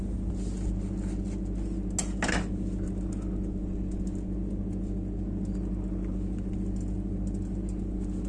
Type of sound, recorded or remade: recorded